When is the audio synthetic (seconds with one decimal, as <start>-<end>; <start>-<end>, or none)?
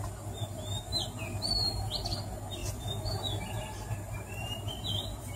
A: none